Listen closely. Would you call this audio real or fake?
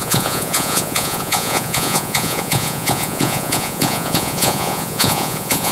fake